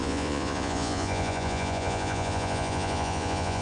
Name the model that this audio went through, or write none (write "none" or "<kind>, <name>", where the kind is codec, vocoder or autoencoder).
vocoder, Vocos